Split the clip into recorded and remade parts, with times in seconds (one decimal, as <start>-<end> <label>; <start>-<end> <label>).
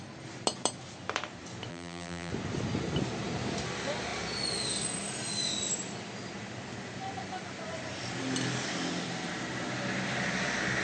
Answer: 0.0-1.7 recorded; 1.7-2.3 remade; 2.3-10.8 recorded